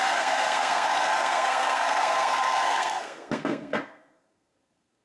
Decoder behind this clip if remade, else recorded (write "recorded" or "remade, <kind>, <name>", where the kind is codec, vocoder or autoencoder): remade, codec, SNAC